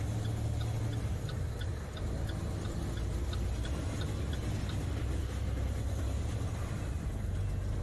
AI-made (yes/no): no